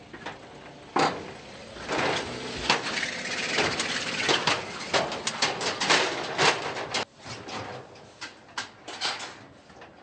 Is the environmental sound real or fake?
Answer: real